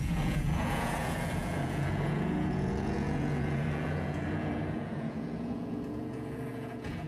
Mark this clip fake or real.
fake